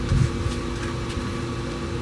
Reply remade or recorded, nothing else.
recorded